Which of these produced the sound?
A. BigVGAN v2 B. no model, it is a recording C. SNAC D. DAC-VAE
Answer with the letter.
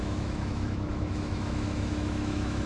D